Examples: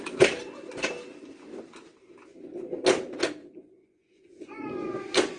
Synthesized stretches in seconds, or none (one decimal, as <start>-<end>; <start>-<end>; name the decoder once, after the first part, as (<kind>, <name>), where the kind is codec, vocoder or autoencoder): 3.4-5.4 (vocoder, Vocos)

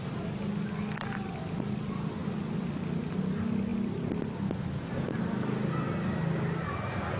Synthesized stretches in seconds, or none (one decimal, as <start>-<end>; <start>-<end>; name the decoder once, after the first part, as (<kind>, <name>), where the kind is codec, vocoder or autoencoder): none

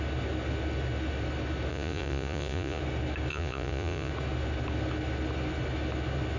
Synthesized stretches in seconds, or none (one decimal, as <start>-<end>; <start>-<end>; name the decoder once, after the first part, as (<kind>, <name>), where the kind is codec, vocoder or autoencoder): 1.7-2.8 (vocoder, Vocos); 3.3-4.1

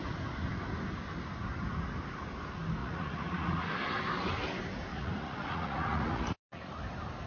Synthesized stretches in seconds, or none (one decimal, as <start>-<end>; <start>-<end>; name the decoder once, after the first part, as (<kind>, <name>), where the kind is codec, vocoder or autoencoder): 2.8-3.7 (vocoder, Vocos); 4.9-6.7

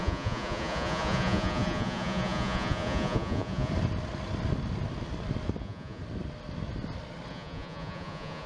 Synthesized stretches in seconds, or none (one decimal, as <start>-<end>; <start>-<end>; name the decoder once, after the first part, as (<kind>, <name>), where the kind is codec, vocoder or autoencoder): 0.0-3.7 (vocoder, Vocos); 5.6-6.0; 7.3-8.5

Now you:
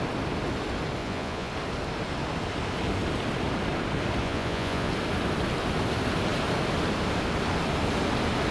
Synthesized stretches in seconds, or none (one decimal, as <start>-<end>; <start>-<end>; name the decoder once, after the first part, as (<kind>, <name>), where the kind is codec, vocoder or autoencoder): 1.0-1.5 (vocoder, Vocos); 4.2-4.9

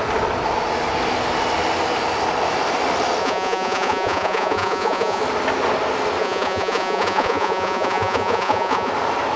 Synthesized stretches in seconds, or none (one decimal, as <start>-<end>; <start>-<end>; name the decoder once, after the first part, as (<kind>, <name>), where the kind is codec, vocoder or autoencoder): 3.2-5.2 (vocoder, Vocos); 6.2-8.9